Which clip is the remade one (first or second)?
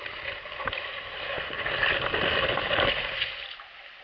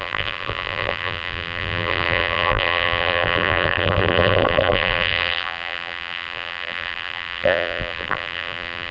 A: second